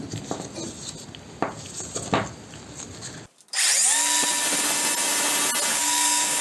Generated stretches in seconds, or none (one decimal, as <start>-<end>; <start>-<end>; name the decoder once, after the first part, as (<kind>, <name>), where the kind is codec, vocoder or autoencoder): 5.7-6.4 (codec, DAC)